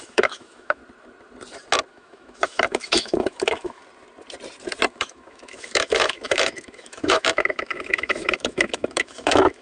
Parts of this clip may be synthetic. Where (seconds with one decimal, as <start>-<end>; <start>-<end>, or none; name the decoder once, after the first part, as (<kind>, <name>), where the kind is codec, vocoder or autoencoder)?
0.0-0.8 (autoencoder, DAC-VAE); 1.9-3.8; 4.9-9.6